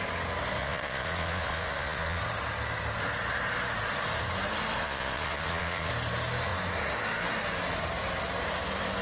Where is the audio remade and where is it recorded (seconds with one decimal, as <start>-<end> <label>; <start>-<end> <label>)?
0.0-0.6 recorded; 0.6-2.2 remade; 2.2-4.8 recorded; 4.8-5.9 remade; 5.9-9.0 recorded